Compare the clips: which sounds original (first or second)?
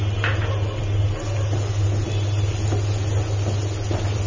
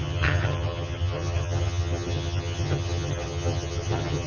first